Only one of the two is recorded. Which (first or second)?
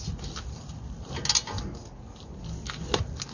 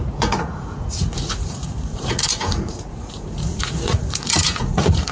first